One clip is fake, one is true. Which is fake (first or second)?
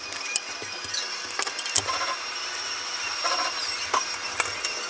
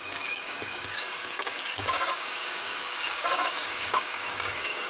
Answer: second